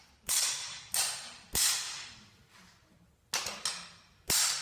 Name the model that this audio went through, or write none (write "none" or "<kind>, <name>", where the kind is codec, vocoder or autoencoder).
none